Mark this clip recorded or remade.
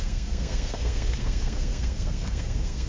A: remade